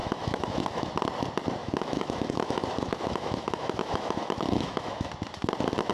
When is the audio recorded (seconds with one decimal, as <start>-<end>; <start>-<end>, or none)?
0.9-1.6; 5.1-5.9